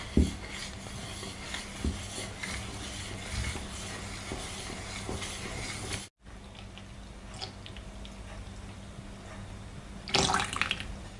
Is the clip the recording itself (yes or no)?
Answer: yes